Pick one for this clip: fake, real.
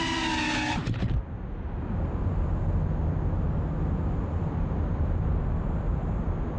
real